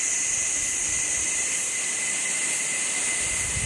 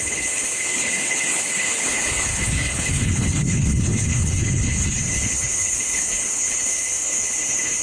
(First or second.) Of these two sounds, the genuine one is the first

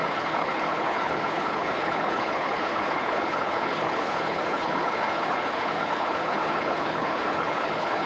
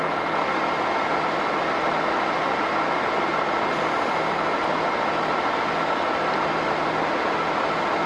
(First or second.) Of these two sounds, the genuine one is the second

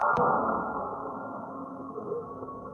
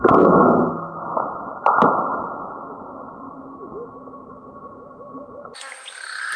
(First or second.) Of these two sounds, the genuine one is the second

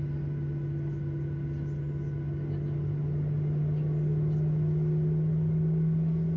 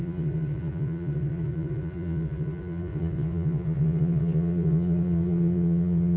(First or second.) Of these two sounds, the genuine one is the first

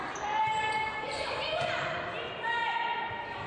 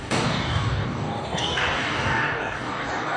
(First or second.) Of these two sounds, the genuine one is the first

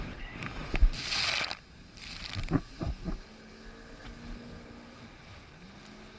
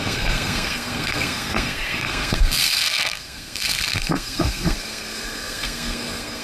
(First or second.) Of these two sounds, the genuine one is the first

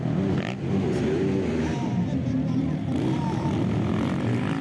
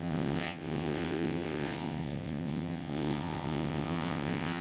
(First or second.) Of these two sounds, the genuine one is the first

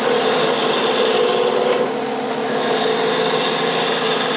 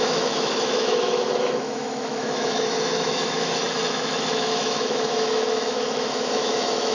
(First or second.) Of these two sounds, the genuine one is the first